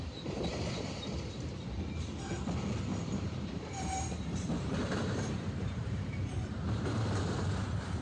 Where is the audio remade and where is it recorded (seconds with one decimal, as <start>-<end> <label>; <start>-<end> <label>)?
0.0-0.5 recorded; 0.5-1.0 remade; 1.0-2.9 recorded; 2.9-8.0 remade